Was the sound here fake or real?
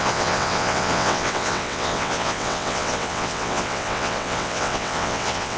fake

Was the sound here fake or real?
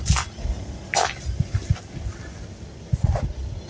real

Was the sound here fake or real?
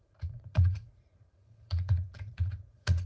fake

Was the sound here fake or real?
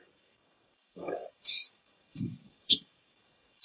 fake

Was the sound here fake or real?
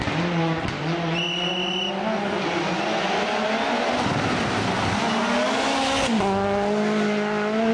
real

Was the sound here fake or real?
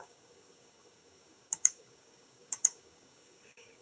fake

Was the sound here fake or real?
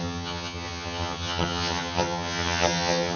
fake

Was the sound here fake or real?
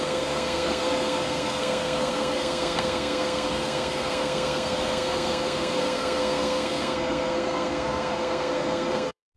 fake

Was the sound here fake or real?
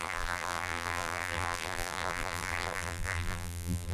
fake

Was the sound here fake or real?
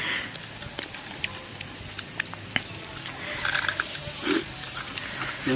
real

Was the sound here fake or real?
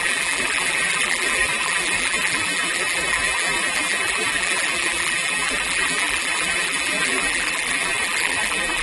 fake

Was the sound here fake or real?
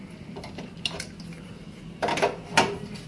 real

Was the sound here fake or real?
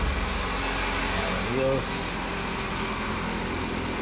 real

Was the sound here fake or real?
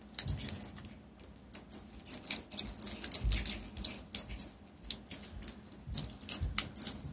real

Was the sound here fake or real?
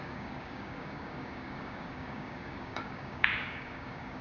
fake